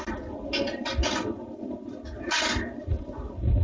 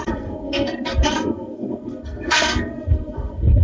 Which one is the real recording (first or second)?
first